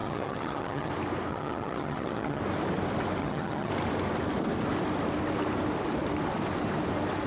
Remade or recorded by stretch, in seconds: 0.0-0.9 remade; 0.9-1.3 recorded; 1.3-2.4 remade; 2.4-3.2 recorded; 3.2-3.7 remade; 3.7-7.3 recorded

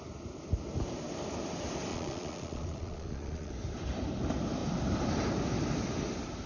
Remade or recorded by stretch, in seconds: 0.0-1.9 recorded; 1.9-3.5 remade; 3.5-6.5 recorded

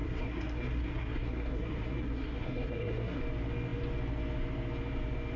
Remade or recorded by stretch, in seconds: 0.0-3.2 remade; 3.2-5.4 recorded

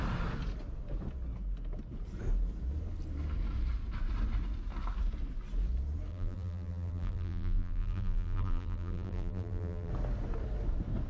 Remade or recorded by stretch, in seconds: 0.0-6.1 recorded; 6.1-9.9 remade; 9.9-11.1 recorded